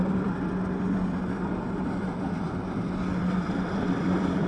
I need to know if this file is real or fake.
fake